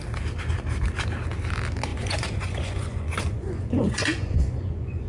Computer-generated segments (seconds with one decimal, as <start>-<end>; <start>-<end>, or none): 1.9-5.1